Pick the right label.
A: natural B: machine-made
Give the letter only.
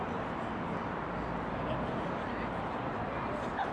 A